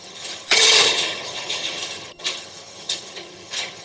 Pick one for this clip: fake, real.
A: fake